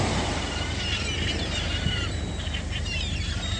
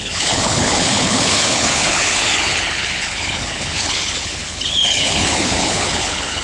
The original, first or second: first